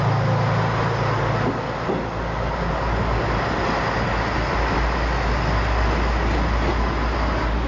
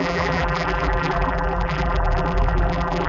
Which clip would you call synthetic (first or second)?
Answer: second